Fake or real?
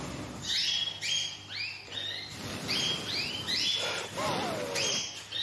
real